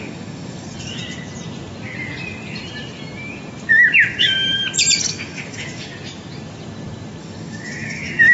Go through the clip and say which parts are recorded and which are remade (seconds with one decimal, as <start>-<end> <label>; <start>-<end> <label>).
0.0-1.0 remade; 1.0-4.1 recorded; 4.1-4.6 remade; 4.6-5.1 recorded; 5.1-5.9 remade; 5.9-7.2 recorded; 7.2-8.3 remade

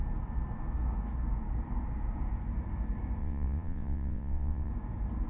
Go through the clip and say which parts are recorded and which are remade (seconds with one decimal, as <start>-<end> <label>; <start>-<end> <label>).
0.0-3.2 recorded; 3.2-4.7 remade; 4.7-5.3 recorded

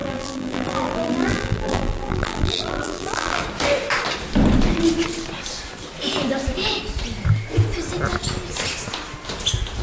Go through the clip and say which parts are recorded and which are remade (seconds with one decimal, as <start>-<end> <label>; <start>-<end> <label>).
0.0-3.4 remade; 3.4-9.8 recorded

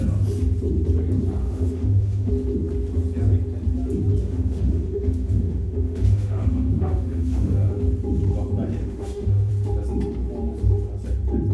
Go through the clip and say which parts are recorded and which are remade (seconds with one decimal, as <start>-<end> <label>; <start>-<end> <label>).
0.0-1.4 recorded; 1.4-2.3 remade; 2.3-4.2 recorded; 4.2-7.7 remade; 7.7-8.8 recorded; 8.8-9.5 remade; 9.5-11.5 recorded

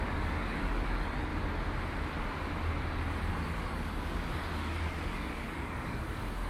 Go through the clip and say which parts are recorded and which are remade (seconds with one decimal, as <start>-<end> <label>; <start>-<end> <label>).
0.0-1.3 remade; 1.3-3.3 recorded; 3.3-6.5 remade

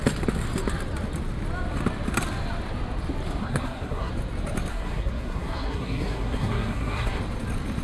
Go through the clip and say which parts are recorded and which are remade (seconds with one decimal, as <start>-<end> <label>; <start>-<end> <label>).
0.0-3.4 recorded; 3.4-4.1 remade; 4.1-4.7 recorded; 4.7-7.2 remade; 7.2-7.8 recorded

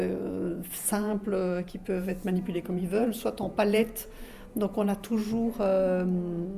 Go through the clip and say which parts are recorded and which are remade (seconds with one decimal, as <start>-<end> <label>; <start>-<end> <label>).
0.0-3.8 remade; 3.8-4.5 recorded; 4.5-5.2 remade; 5.2-6.6 recorded